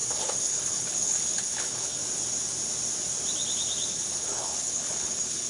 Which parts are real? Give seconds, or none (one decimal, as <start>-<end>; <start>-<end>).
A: 2.0-3.9